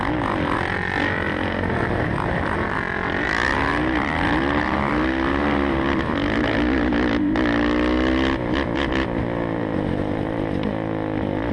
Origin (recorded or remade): recorded